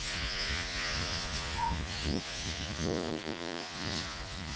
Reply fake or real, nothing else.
fake